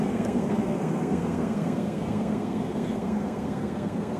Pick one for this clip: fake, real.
fake